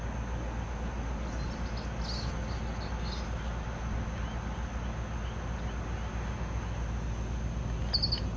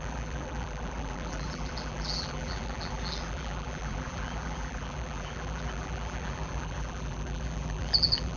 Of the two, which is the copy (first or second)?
second